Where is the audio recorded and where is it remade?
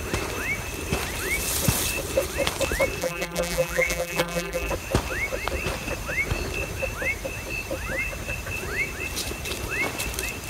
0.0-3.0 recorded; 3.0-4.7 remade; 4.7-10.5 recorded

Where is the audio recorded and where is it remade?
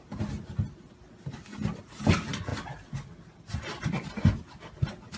0.0-5.2 recorded